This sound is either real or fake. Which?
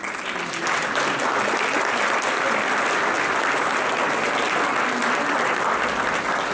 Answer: real